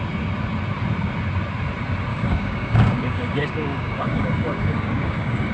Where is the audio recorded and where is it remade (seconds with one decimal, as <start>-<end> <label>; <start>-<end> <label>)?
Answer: 0.0-2.1 recorded; 2.1-5.5 remade

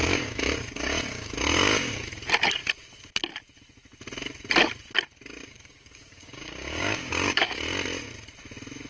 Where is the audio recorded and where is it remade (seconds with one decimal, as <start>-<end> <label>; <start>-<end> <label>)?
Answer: 0.0-2.1 remade; 2.1-5.4 recorded; 5.4-7.6 remade; 7.6-8.9 recorded

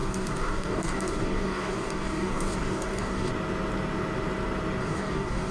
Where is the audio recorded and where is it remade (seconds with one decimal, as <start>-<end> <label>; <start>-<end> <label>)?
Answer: 0.0-3.3 remade; 3.3-4.8 recorded; 4.8-5.5 remade

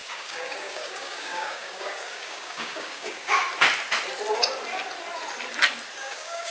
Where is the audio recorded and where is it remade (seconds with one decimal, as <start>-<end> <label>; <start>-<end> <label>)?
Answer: 0.0-3.4 remade; 3.4-6.0 recorded; 6.0-6.5 remade

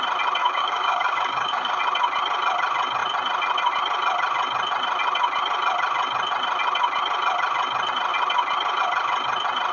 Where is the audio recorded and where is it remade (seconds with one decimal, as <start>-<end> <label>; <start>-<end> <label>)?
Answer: 0.0-0.4 recorded; 0.4-1.8 remade; 1.8-9.7 recorded

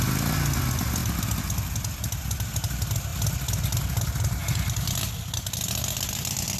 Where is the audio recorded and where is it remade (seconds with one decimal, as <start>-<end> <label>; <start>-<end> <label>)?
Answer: 0.0-6.6 recorded

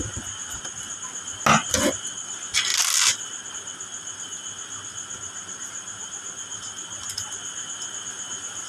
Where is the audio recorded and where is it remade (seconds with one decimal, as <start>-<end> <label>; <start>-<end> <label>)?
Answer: 0.0-8.7 recorded

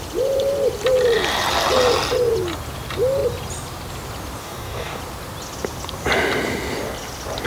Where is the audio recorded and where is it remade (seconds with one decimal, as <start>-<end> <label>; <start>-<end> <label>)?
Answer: 0.0-4.4 recorded; 4.4-5.0 remade; 5.0-7.5 recorded